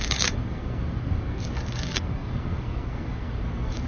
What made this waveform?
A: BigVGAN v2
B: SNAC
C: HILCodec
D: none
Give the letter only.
B